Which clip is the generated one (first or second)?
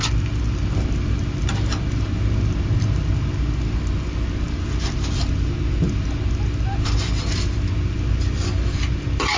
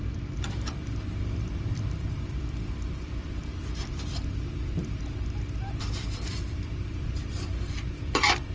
second